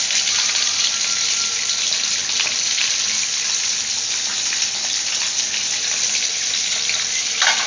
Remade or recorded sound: recorded